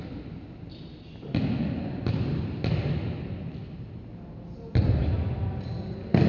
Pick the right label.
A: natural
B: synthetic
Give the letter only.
A